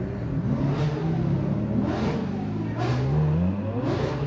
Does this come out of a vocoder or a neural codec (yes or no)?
no